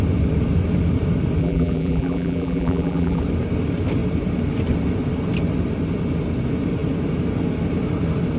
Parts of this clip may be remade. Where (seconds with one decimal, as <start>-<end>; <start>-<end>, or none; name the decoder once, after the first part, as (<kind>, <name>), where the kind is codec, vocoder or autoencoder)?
1.4-3.2 (vocoder, BigVGAN v2)